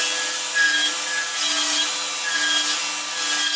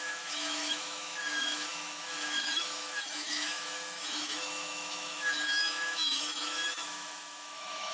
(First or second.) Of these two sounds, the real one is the first